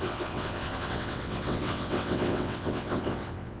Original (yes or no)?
no